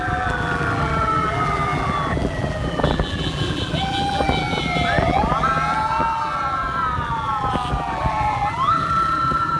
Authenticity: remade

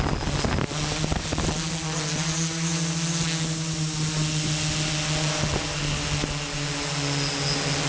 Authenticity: recorded